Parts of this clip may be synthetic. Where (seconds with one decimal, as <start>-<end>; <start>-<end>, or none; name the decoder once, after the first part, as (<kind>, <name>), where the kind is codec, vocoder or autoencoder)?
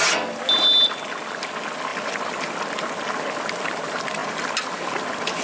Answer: 1.9-2.6 (vocoder, BigVGAN v2); 4.2-5.0